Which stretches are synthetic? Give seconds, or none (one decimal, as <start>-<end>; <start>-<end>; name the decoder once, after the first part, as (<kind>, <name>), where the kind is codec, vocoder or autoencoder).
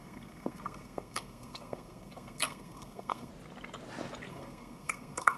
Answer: 0.0-3.3 (codec, SNAC); 4.3-5.4